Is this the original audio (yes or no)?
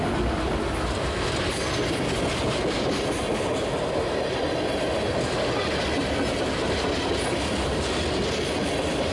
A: yes